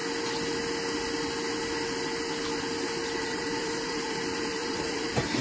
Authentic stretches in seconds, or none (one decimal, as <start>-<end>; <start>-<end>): 0.0-3.2